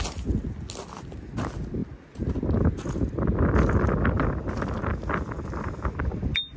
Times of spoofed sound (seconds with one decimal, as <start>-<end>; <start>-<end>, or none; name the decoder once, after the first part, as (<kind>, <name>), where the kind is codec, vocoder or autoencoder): none